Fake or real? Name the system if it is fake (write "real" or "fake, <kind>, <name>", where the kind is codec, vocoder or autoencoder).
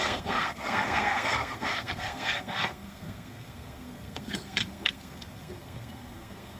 fake, codec, SNAC